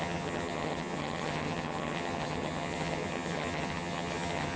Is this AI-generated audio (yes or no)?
yes